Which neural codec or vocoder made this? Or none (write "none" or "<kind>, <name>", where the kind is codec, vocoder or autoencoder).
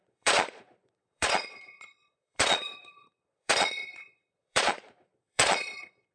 vocoder, Vocos